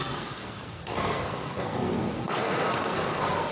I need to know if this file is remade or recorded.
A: remade